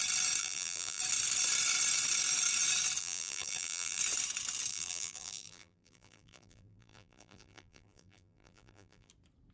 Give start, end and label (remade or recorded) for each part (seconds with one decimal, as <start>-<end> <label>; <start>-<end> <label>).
0.0-0.4 recorded; 0.4-1.0 remade; 1.0-3.0 recorded; 3.0-4.0 remade; 4.0-4.7 recorded; 4.7-9.1 remade; 9.1-9.5 recorded